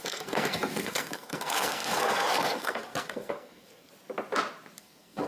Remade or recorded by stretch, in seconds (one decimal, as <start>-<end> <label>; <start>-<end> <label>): 0.0-3.9 remade; 3.9-4.8 recorded; 4.8-5.3 remade